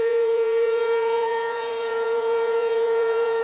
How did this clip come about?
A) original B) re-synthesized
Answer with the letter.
B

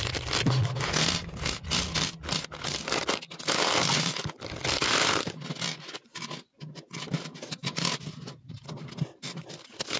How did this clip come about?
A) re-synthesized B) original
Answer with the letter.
B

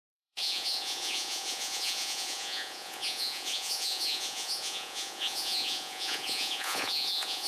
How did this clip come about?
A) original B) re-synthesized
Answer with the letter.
B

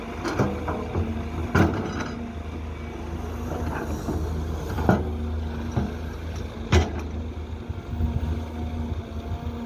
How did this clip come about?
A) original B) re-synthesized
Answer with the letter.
A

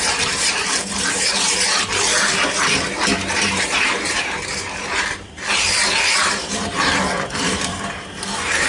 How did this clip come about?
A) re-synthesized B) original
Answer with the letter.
A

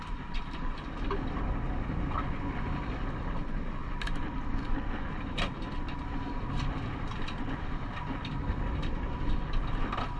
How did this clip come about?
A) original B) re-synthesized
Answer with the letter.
A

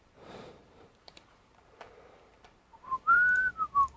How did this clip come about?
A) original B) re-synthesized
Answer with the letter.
B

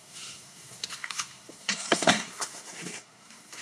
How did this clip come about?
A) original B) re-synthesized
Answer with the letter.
B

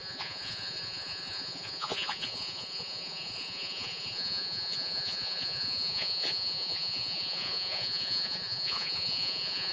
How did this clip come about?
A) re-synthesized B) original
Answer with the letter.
A